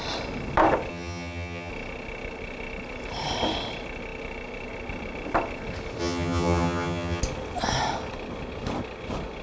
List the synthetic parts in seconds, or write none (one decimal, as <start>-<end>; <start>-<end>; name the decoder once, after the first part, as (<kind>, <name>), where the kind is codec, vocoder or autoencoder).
0.9-1.7 (vocoder, HiFi-GAN); 6.0-7.2